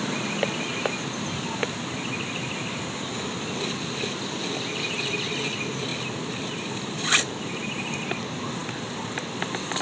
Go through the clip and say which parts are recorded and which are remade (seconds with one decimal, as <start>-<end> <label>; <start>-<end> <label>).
0.0-0.7 remade; 0.7-2.7 recorded; 2.7-9.8 remade